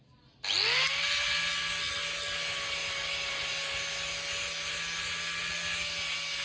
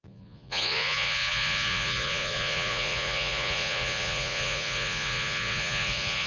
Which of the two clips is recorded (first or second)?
first